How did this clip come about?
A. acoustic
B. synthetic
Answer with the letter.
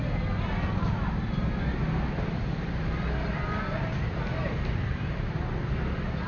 A